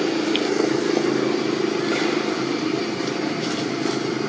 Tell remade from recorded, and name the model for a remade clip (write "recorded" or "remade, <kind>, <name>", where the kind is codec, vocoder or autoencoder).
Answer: recorded